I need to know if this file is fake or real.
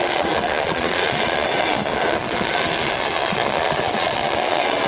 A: fake